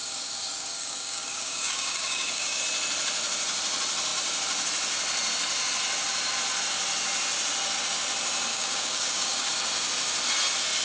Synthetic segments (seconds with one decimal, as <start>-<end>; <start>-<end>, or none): 0.0-2.6; 8.5-9.5